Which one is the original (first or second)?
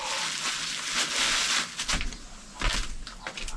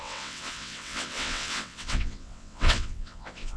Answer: first